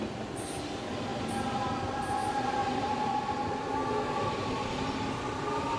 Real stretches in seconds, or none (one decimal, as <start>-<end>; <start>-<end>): 0.0-5.8